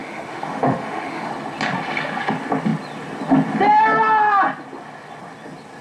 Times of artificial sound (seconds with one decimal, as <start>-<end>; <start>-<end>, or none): 0.0-1.3